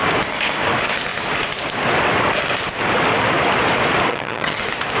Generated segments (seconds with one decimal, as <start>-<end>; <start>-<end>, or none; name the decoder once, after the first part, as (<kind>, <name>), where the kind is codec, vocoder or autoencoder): 4.1-4.6 (vocoder, HiFi-GAN)